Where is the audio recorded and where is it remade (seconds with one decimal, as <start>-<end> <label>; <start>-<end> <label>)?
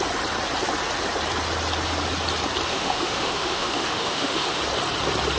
0.0-2.7 recorded; 2.7-4.6 remade; 4.6-5.4 recorded